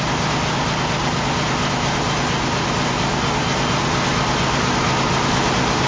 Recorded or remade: recorded